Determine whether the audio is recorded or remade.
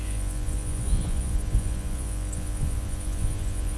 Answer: remade